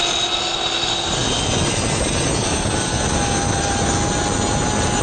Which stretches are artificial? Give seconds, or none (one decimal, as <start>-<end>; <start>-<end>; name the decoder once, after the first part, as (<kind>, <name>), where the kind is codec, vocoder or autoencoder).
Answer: none